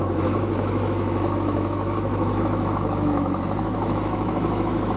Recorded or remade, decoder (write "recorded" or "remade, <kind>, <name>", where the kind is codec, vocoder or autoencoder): remade, autoencoder, DAC-VAE